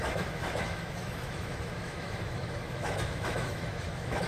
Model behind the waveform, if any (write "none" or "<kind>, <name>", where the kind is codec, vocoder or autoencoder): autoencoder, DAC-VAE